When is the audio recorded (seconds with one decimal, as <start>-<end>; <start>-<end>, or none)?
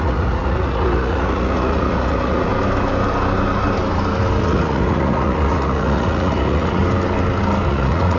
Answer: 2.5-4.4; 6.8-7.7